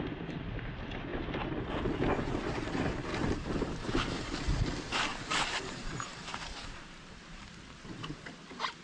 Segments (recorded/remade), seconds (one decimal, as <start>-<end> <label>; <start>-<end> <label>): 0.0-3.1 recorded; 3.1-4.4 remade; 4.4-5.1 recorded; 5.1-7.4 remade; 7.4-8.8 recorded